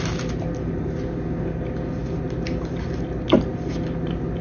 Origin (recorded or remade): recorded